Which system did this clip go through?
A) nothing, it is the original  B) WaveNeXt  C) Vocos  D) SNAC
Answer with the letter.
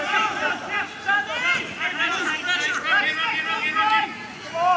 A